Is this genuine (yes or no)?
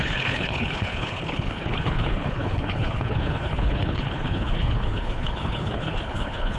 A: no